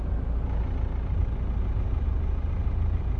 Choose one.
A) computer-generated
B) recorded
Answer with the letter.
B